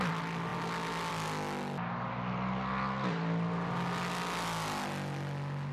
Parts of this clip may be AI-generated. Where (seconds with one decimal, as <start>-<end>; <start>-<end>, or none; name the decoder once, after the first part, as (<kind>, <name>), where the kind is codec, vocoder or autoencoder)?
none

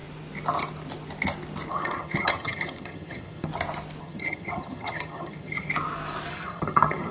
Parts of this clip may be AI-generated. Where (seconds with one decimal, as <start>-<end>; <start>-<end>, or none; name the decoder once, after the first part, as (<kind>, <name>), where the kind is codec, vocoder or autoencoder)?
1.7-3.5 (vocoder, HiFi-GAN); 4.0-5.7; 6.3-7.1